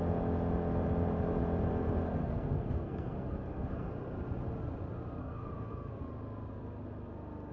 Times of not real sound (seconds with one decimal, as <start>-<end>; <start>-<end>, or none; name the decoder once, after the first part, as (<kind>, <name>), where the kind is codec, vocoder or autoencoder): 2.2-3.9 (codec, SNAC); 5.2-6.0